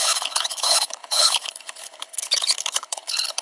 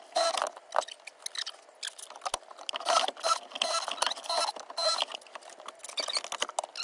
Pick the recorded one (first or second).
second